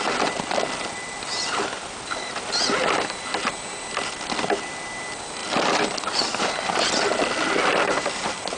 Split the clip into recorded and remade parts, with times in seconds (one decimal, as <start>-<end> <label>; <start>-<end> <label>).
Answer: 0.0-8.6 recorded